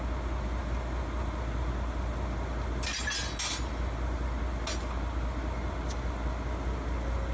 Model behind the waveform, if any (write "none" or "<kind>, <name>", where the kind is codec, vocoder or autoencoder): none